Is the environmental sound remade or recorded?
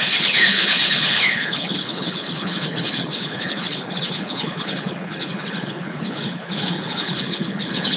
remade